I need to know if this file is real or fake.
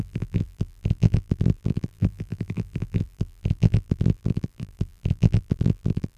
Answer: fake